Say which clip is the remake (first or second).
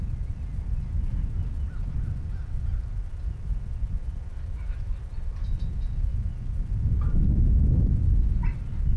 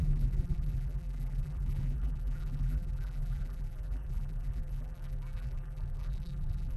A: second